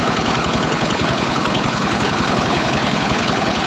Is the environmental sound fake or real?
fake